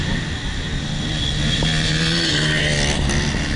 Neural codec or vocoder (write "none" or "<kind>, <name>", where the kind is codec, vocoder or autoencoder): none